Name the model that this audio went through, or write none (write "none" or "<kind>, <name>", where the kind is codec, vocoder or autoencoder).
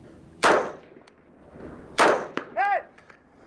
vocoder, BigVGAN v2